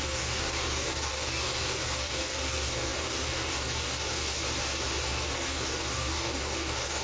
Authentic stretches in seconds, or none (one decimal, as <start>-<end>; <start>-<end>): 4.4-5.0